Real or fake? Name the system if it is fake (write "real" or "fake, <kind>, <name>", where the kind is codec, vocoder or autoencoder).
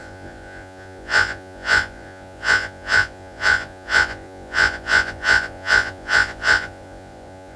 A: fake, vocoder, Vocos